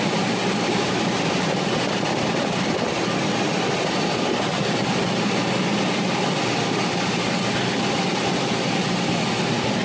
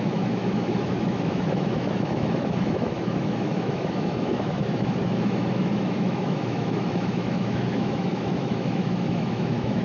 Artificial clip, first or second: second